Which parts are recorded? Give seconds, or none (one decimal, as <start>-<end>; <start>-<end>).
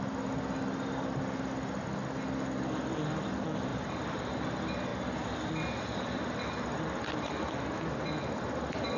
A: 0.0-3.7; 4.3-9.0